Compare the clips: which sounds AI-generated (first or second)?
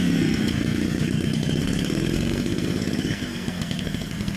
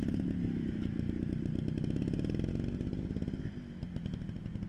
first